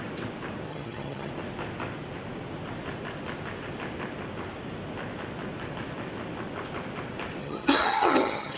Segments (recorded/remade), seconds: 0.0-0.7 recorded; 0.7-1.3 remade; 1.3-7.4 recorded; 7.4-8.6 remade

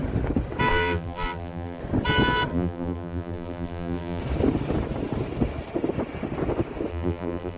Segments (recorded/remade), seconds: 0.0-0.7 recorded; 0.7-1.8 remade; 1.8-2.5 recorded; 2.5-4.2 remade; 4.2-6.9 recorded; 6.9-7.6 remade

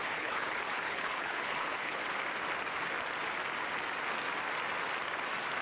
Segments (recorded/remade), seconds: 0.0-2.0 remade; 2.0-5.6 recorded

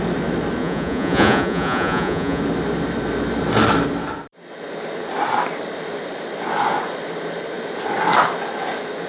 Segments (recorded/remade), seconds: 0.0-0.6 recorded; 0.6-2.4 remade; 2.4-9.1 recorded

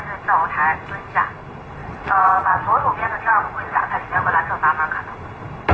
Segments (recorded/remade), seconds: 0.0-1.8 recorded; 1.8-4.4 remade; 4.4-5.7 recorded

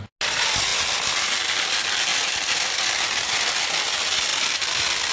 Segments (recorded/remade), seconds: 0.0-5.1 recorded

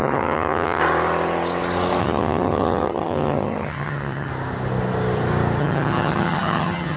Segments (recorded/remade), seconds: 0.0-0.8 remade; 0.8-2.0 recorded; 2.0-4.3 remade; 4.3-5.6 recorded; 5.6-7.0 remade

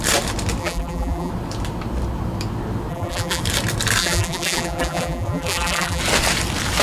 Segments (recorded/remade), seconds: 0.0-0.6 recorded; 0.6-1.3 remade; 1.3-2.9 recorded; 2.9-3.4 remade; 3.4-4.0 recorded; 4.0-6.0 remade; 6.0-6.8 recorded